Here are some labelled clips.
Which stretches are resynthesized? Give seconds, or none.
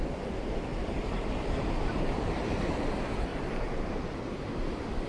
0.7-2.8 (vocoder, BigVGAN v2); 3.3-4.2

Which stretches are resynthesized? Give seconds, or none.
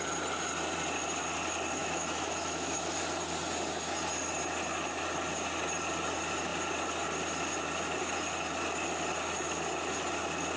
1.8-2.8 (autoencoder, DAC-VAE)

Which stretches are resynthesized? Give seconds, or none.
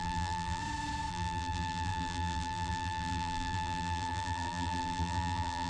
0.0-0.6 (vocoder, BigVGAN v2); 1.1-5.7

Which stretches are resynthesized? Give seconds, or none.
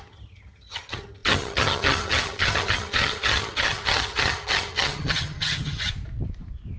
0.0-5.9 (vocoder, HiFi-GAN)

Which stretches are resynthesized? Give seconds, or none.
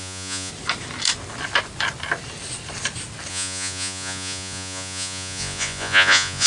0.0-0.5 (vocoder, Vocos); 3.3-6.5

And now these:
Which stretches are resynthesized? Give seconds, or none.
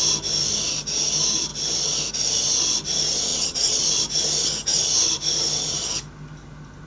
3.3-3.9 (vocoder, WaveNeXt)